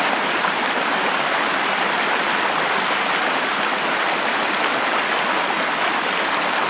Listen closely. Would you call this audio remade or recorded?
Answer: recorded